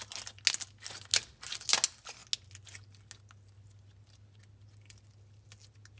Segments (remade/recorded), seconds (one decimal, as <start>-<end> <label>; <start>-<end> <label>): 0.0-6.0 recorded